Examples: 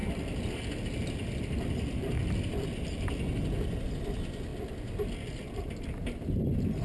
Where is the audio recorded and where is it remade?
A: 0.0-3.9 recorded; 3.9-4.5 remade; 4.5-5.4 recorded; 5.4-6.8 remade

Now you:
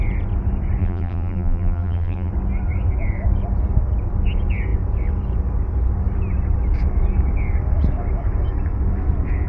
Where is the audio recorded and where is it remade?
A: 0.0-0.8 recorded; 0.8-2.3 remade; 2.3-9.5 recorded

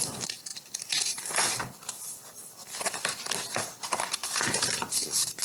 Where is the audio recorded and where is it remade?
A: 0.0-4.2 remade; 4.2-4.9 recorded; 4.9-5.4 remade

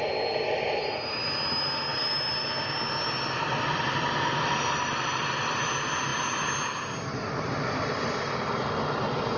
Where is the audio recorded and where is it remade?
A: 0.0-1.9 recorded; 1.9-4.1 remade; 4.1-9.4 recorded

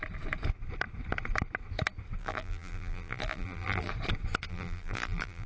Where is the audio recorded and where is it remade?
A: 0.0-2.2 recorded; 2.2-3.9 remade; 3.9-4.5 recorded; 4.5-5.5 remade

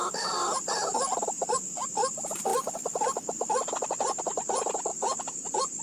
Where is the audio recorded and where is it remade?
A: 0.0-0.4 recorded; 0.4-1.5 remade; 1.5-2.5 recorded; 2.5-4.2 remade; 4.2-4.9 recorded; 4.9-5.8 remade

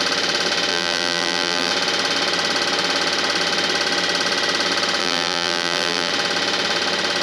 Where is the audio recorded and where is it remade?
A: 0.0-0.7 recorded; 0.7-1.7 remade; 1.7-5.0 recorded; 5.0-6.1 remade; 6.1-7.2 recorded